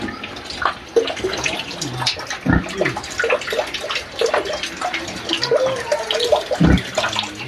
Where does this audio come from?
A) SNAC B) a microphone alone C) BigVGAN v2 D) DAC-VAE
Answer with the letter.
B